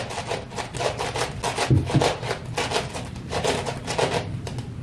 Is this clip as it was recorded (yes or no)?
yes